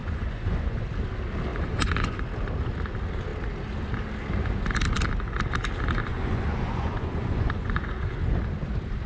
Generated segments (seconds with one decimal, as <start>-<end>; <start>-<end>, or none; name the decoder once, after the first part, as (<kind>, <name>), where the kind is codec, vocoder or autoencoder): 0.0-0.9 (vocoder, Vocos); 1.5-2.2; 6.1-8.3